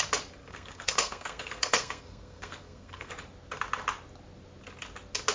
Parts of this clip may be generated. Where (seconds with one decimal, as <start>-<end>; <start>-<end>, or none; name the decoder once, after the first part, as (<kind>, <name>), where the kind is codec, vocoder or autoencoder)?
0.4-3.1 (codec, SNAC)